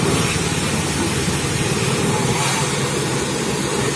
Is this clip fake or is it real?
real